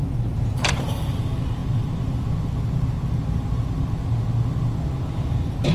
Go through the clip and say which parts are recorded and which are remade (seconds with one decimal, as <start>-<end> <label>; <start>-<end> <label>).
0.0-0.6 recorded; 0.6-1.2 remade; 1.2-5.7 recorded